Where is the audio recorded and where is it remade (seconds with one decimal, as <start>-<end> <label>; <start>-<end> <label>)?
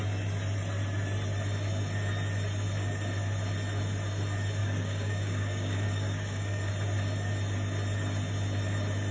0.0-4.6 recorded; 4.6-6.7 remade; 6.7-9.1 recorded